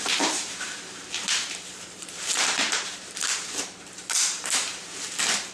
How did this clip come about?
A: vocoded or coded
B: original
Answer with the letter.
A